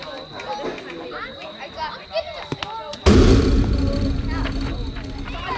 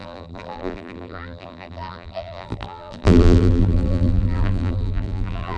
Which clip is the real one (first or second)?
first